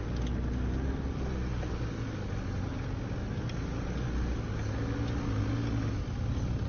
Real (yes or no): yes